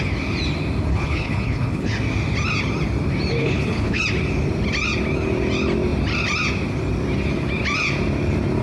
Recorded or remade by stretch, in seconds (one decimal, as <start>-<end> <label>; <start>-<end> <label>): 0.0-0.9 recorded; 0.9-1.9 remade; 1.9-3.4 recorded; 3.4-4.0 remade; 4.0-8.6 recorded